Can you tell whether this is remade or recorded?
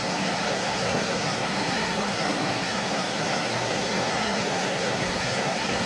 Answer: remade